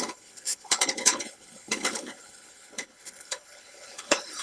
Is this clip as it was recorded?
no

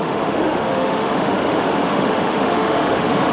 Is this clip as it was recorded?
no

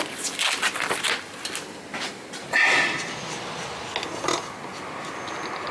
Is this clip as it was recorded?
yes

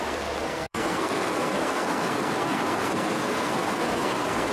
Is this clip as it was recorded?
no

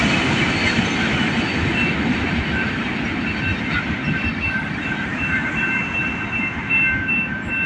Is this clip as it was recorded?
yes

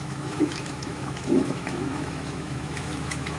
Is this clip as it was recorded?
no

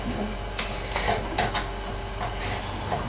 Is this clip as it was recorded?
yes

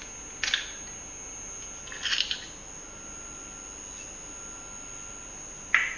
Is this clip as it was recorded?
yes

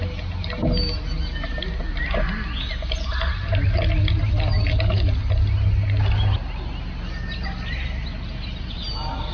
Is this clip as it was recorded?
yes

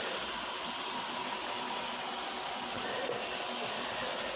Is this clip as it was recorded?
yes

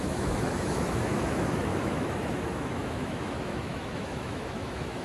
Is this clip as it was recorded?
no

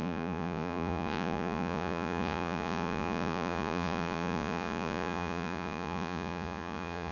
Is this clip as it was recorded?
no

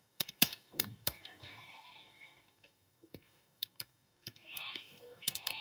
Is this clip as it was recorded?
no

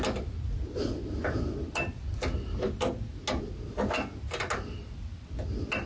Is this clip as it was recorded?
yes